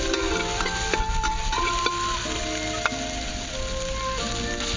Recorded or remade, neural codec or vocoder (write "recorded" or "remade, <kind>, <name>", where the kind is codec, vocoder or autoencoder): recorded